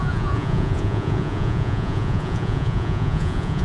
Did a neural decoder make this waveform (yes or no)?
yes